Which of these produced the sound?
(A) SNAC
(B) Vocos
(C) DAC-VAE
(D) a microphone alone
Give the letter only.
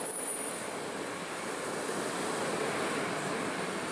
D